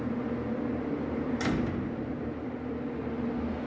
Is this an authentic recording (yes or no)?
yes